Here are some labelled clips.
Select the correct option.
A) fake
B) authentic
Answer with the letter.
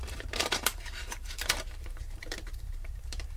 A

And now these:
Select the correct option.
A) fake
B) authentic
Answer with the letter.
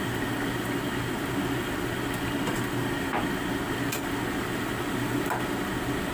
B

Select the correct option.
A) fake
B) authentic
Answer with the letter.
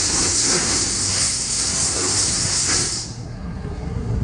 A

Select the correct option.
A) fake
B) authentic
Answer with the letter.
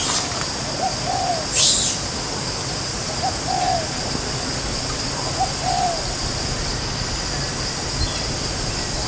B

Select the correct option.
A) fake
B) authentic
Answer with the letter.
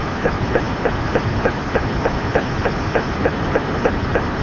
B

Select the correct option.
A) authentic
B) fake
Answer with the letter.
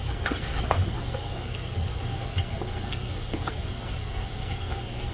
B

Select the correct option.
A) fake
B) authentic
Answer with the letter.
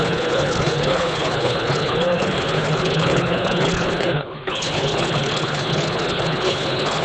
A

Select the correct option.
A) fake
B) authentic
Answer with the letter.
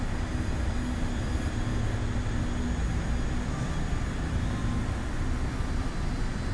B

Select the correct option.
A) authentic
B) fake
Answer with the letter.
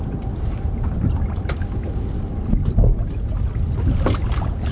A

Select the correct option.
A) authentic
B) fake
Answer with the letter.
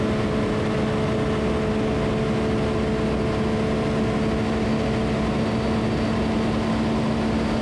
A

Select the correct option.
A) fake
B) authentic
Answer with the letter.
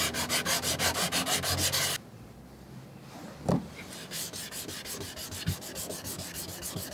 B